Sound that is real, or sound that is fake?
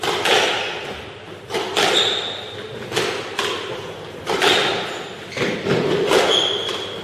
real